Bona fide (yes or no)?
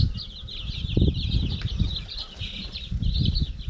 yes